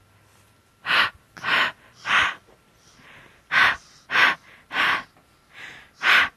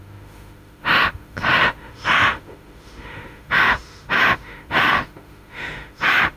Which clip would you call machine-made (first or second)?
second